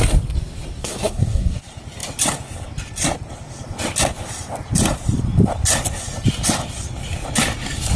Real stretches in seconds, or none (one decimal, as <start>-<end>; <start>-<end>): 0.0-0.8; 1.6-8.0